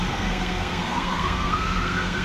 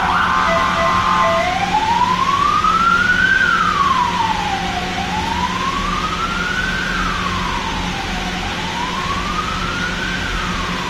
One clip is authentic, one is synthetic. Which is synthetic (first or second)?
first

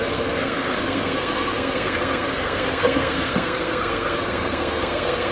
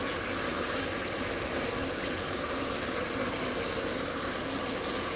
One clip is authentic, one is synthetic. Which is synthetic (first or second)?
first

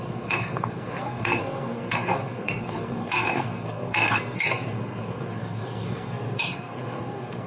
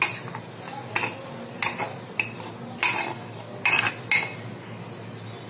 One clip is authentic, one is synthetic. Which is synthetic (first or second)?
first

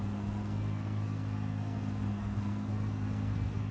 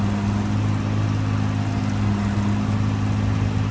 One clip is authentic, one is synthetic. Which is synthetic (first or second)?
first